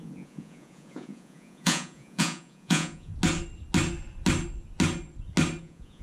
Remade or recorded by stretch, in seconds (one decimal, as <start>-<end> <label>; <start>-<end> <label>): 0.0-3.1 remade; 3.1-5.6 recorded; 5.6-6.0 remade